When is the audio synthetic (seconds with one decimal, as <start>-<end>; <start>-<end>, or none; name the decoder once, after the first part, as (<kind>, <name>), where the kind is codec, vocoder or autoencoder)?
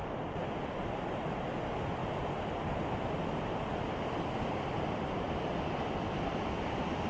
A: 2.0-6.2 (vocoder, BigVGAN v2)